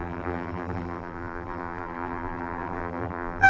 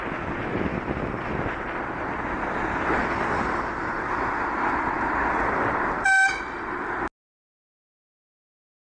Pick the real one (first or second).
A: second